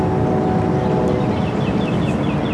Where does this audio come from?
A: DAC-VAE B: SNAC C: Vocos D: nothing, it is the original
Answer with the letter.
D